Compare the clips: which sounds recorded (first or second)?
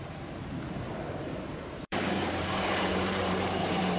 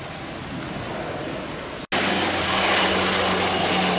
second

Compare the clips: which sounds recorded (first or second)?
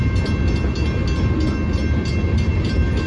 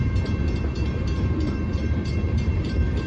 first